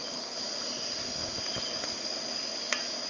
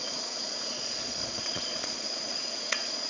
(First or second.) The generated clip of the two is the second